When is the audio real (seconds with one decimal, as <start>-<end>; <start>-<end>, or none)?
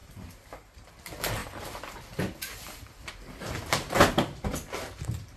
0.9-1.4; 3.1-5.4